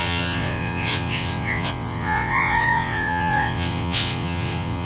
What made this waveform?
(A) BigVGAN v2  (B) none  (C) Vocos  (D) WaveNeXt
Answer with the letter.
D